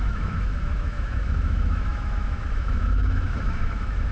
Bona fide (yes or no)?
no